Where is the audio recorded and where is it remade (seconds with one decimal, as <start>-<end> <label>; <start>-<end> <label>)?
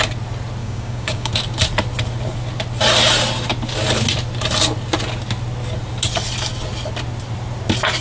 0.0-0.6 recorded; 0.6-1.3 remade; 1.3-8.0 recorded